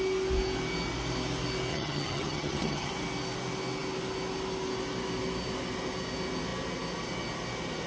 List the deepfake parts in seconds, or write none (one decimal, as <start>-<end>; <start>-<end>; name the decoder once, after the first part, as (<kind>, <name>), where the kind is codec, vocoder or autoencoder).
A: 1.7-2.9 (vocoder, HiFi-GAN)